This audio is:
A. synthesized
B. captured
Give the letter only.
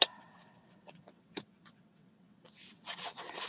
A